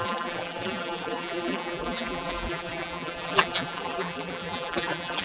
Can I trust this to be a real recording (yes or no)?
no